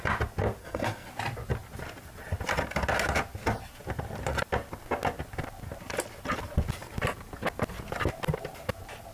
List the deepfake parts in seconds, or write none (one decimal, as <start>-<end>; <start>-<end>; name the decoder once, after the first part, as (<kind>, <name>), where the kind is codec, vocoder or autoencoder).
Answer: 0.6-1.1 (codec, SNAC)